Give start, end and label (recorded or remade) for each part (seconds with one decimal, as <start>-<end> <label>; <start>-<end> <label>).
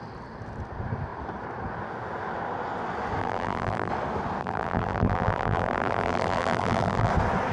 0.0-3.2 recorded; 3.2-3.9 remade; 3.9-4.4 recorded; 4.4-7.1 remade; 7.1-7.5 recorded